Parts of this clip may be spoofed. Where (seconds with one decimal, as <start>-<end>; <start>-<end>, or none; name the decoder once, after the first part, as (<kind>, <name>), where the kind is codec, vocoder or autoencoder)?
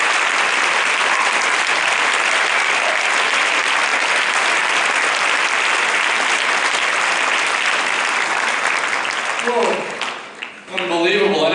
none